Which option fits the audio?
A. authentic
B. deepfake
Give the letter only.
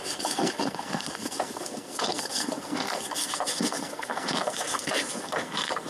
B